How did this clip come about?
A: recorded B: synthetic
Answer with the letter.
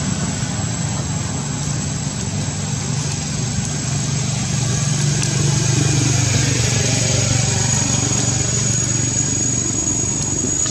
A